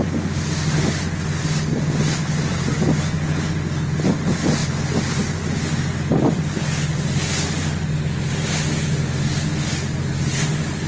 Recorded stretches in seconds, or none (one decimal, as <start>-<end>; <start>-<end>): 0.0-10.9